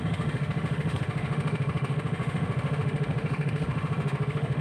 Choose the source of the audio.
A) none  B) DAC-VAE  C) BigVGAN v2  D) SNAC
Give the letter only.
B